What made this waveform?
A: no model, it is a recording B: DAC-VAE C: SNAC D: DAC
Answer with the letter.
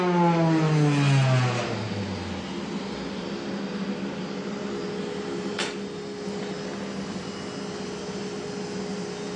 A